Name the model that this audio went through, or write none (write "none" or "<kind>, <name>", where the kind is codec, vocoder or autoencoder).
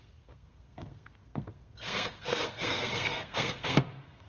codec, SNAC